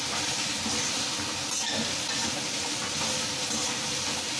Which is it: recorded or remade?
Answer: recorded